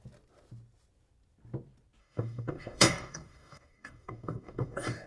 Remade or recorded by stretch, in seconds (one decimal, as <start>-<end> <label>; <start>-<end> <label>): 0.0-2.0 recorded; 2.0-5.1 remade